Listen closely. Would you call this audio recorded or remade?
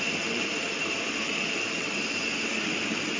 remade